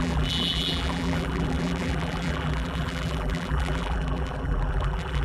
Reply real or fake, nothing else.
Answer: fake